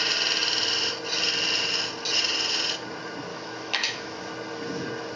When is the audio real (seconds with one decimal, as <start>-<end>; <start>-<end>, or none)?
0.0-3.3; 4.2-5.2